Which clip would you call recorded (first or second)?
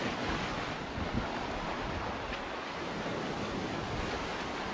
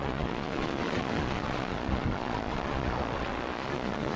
first